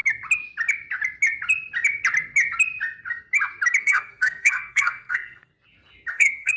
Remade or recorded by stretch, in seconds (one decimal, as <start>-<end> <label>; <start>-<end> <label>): 0.0-3.8 recorded; 3.8-5.5 remade; 5.5-6.1 recorded; 6.1-6.6 remade